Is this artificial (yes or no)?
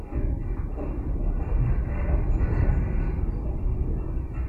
no